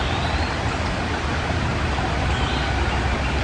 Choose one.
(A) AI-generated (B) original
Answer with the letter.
B